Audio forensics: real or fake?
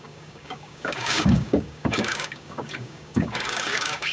fake